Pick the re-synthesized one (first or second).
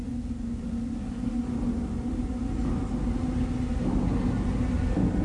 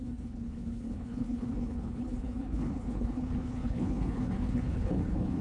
second